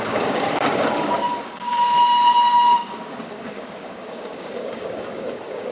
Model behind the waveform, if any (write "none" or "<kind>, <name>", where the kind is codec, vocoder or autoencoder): codec, DAC